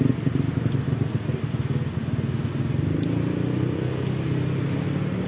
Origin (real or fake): real